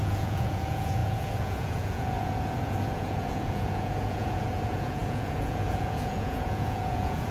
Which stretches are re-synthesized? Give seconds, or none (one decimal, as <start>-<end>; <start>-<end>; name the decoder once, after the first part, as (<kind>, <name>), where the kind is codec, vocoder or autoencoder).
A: 0.0-7.3 (vocoder, Vocos)